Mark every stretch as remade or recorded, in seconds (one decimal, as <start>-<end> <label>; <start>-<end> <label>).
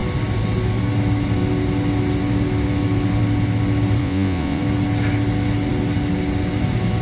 0.0-4.0 recorded; 4.0-4.6 remade; 4.6-7.0 recorded